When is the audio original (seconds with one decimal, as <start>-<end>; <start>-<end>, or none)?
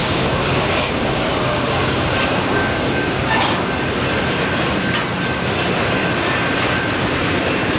3.7-7.8